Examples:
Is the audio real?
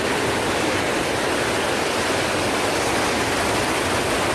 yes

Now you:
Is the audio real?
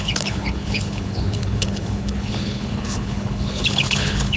no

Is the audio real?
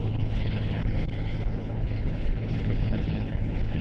no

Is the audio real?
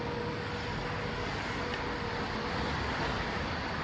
yes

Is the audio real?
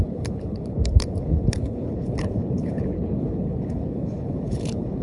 no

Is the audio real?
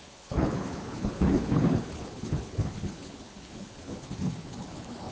no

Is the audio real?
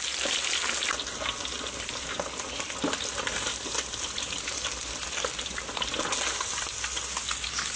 yes